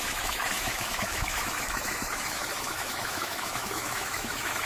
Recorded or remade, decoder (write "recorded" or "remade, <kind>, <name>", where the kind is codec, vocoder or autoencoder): remade, autoencoder, DAC-VAE